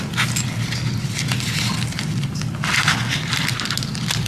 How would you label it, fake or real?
real